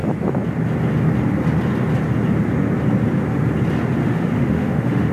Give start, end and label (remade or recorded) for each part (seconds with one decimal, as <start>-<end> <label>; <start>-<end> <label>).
0.0-4.0 recorded; 4.0-5.1 remade